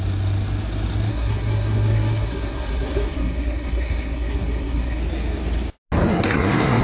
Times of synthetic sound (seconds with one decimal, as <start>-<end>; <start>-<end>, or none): 1.1-5.0; 6.1-6.8